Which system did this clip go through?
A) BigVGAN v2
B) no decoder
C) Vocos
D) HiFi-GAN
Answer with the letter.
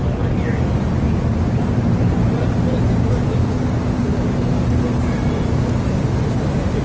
B